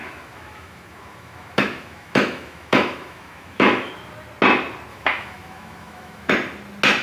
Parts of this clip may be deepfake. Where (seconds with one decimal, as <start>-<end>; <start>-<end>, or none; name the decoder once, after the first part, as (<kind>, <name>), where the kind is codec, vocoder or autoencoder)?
0.0-3.9 (autoencoder, DAC-VAE); 4.9-6.3